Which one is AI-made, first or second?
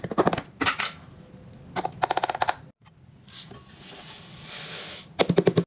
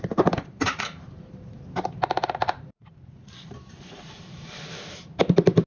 second